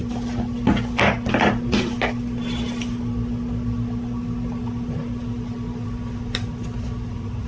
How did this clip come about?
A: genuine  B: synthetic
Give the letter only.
A